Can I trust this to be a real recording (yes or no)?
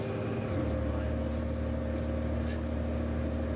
yes